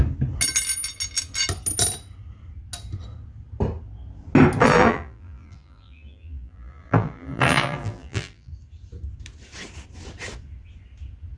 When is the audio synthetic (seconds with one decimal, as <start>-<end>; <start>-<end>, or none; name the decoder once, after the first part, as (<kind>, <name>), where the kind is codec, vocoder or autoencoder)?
4.6-8.5 (vocoder, BigVGAN v2)